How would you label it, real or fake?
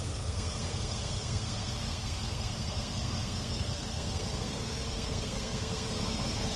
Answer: fake